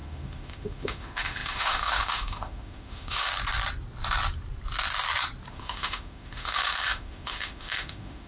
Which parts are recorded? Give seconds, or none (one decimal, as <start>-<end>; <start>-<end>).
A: 3.3-5.5